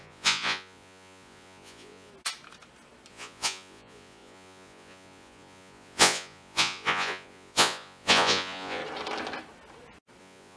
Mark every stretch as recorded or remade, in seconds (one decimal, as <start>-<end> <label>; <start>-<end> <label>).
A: 0.0-2.1 remade; 2.1-3.1 recorded; 3.1-8.8 remade; 8.8-10.2 recorded; 10.2-10.6 remade